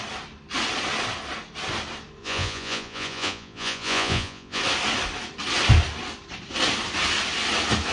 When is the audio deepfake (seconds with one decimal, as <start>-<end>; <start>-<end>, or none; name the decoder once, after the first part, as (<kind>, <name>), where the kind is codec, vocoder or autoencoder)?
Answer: 2.2-4.6 (vocoder, Vocos)